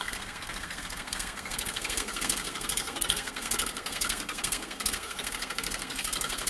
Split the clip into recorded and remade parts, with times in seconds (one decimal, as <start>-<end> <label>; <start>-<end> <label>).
0.0-6.5 remade